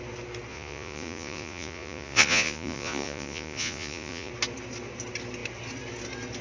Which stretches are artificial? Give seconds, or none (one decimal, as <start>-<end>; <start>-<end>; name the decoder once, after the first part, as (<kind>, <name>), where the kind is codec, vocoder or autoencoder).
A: 0.5-4.3 (vocoder, Vocos)